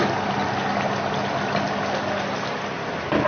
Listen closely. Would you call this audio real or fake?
real